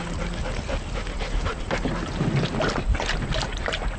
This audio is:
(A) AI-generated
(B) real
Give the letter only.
B